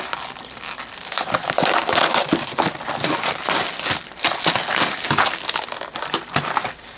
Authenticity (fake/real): real